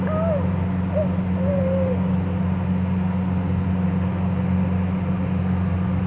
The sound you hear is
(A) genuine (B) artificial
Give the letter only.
A